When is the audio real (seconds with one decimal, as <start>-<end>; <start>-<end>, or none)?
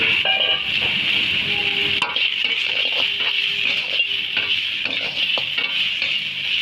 0.0-6.6